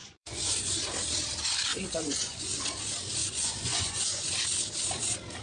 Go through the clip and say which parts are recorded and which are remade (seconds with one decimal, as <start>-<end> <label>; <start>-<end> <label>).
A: 0.0-0.8 remade; 0.8-1.7 recorded; 1.7-2.6 remade; 2.6-3.2 recorded; 3.2-4.3 remade; 4.3-5.4 recorded

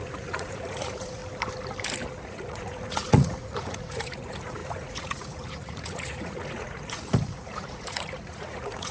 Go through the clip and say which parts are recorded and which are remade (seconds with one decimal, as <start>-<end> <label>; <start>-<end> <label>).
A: 0.0-1.2 remade; 1.2-2.2 recorded; 2.2-8.9 remade

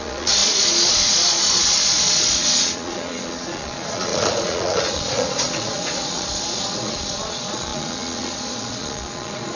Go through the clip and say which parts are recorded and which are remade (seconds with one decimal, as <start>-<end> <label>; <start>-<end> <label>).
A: 0.0-9.6 remade